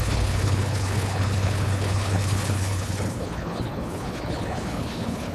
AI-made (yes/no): yes